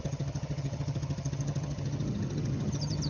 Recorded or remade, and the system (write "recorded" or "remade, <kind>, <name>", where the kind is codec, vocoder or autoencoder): remade, vocoder, HiFi-GAN